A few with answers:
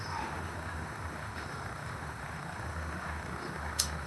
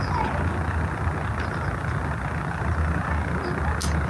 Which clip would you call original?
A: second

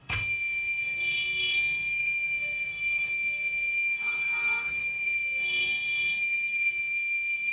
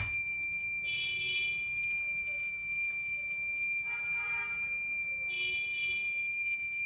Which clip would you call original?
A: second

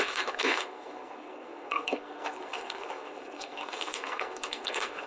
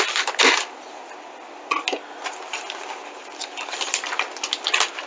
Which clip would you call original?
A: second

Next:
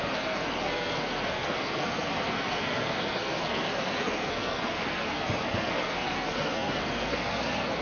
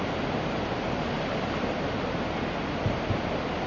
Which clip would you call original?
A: second